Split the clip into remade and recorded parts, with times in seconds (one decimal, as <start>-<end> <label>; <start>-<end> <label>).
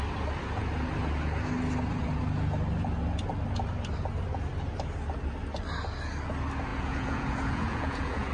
0.0-6.7 recorded; 6.7-8.3 remade